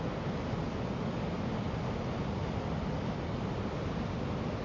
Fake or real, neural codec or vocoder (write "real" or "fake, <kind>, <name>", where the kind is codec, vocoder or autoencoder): real